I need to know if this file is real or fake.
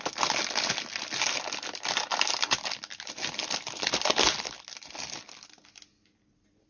real